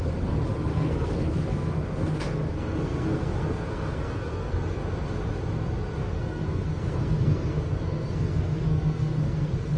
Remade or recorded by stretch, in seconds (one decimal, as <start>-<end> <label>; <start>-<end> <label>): 0.0-0.7 recorded; 0.7-4.8 remade; 4.8-6.0 recorded; 6.0-9.8 remade